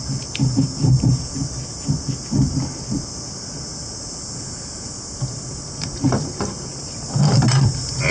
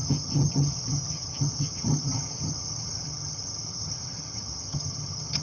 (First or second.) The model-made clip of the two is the second